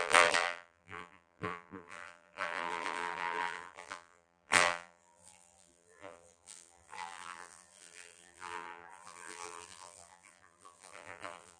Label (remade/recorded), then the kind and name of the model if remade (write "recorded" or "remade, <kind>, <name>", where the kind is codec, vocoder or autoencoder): remade, vocoder, BigVGAN v2